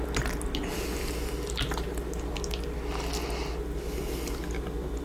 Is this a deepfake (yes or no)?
no